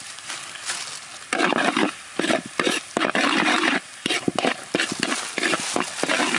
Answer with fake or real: real